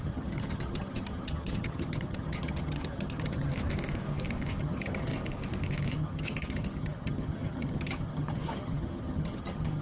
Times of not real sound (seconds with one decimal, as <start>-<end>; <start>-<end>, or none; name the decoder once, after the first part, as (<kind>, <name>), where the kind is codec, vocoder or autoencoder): 0.0-3.5 (vocoder, HiFi-GAN); 4.6-5.1; 5.9-9.8